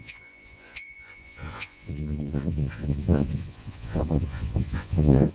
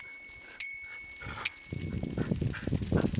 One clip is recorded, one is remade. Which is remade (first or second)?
first